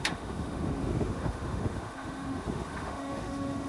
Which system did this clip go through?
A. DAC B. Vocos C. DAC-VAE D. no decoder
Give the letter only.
C